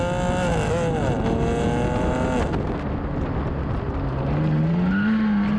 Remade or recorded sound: recorded